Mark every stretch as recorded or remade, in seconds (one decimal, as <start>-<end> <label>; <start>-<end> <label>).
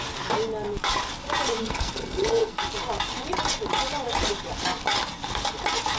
0.0-1.6 recorded; 1.6-2.6 remade; 2.6-6.0 recorded